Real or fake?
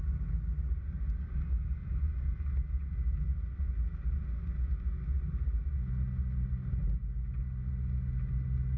real